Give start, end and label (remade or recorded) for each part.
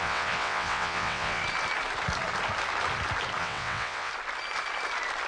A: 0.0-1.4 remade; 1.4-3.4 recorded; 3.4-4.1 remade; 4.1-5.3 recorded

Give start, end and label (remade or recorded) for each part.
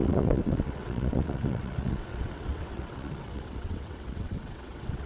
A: 0.0-5.1 remade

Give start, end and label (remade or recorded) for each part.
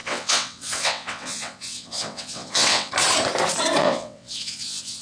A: 0.0-2.9 remade; 2.9-3.8 recorded; 3.8-5.0 remade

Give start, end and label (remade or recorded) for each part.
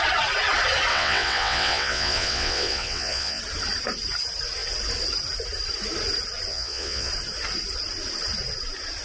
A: 0.0-0.9 recorded; 0.9-3.4 remade; 3.4-6.5 recorded; 6.5-7.1 remade; 7.1-9.0 recorded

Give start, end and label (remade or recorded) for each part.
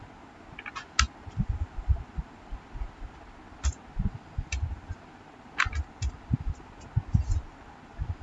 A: 0.0-8.2 recorded